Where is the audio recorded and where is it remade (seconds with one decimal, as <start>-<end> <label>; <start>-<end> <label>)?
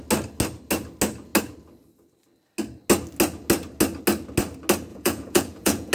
0.0-4.9 recorded; 4.9-5.9 remade